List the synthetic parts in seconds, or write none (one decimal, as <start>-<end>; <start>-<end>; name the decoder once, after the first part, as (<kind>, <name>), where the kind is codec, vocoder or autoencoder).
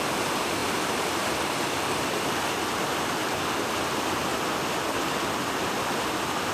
none